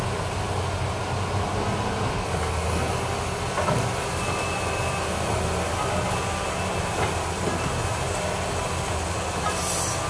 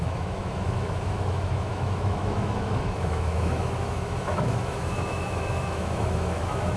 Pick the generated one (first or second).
second